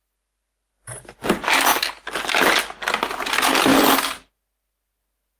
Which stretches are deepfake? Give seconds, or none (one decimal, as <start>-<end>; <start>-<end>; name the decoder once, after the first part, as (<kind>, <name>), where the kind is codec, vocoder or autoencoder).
none